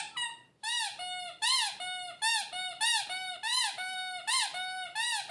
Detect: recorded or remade recorded